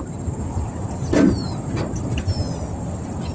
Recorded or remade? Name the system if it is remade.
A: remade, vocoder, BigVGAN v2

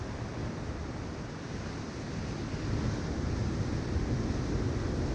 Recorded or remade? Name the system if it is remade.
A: recorded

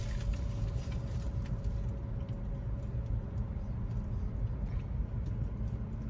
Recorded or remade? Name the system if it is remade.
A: recorded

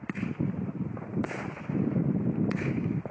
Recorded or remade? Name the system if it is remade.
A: remade, vocoder, BigVGAN v2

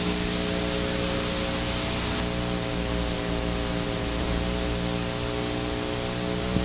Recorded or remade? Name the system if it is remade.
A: recorded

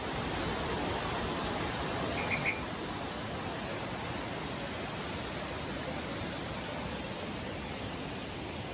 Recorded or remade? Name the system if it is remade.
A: recorded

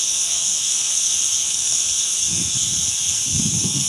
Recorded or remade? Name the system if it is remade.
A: remade, codec, SNAC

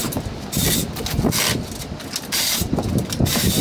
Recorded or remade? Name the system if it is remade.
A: recorded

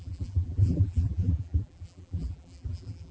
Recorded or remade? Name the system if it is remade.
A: remade, vocoder, BigVGAN v2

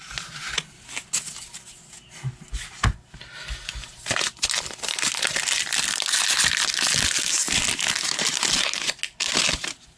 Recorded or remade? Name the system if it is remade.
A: recorded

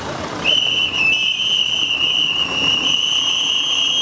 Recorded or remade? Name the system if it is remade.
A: remade, vocoder, BigVGAN v2